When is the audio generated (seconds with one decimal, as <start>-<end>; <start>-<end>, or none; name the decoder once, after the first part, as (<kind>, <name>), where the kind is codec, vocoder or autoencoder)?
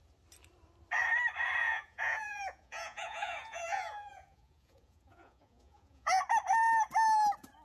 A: 1.6-6.2 (vocoder, Vocos)